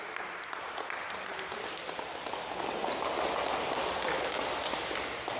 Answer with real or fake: real